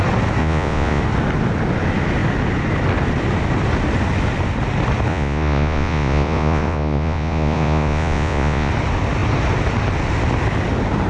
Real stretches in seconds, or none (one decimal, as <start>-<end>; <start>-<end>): 0.0-0.4; 1.0-5.1; 8.7-11.1